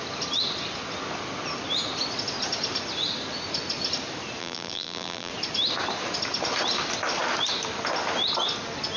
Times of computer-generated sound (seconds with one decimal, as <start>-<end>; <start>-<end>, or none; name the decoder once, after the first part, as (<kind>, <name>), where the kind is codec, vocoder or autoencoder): 4.4-5.3 (vocoder, BigVGAN v2)